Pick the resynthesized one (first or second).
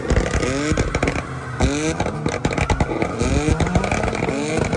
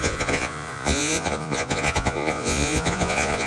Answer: second